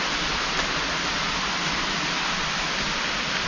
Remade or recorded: recorded